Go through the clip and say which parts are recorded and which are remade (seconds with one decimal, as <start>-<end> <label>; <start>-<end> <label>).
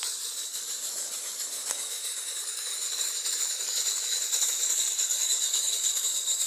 0.0-6.5 remade